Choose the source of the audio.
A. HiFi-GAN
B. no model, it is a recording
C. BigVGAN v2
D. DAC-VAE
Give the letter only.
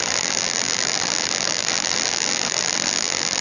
C